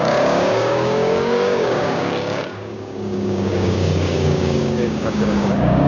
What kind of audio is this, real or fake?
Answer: fake